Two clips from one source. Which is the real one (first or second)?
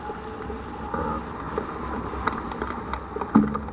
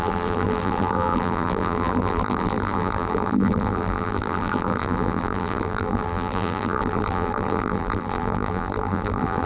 first